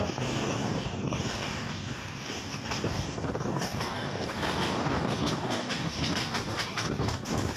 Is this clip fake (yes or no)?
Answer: yes